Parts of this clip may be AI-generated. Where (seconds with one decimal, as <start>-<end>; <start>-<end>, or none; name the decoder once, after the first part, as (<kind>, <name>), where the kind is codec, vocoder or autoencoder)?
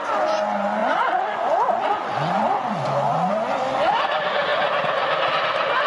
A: 0.8-3.3 (vocoder, Vocos)